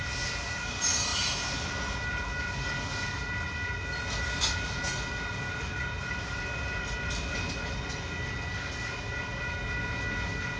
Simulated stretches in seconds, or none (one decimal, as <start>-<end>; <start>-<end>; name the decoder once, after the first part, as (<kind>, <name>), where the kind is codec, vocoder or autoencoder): none